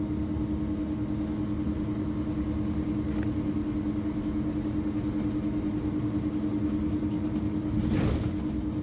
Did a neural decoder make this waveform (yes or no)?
no